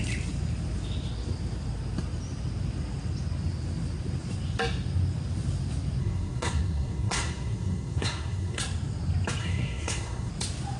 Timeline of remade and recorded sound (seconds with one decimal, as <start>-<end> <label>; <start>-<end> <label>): 0.0-6.0 recorded; 6.0-8.6 remade; 8.6-9.4 recorded; 9.4-10.3 remade; 10.3-10.8 recorded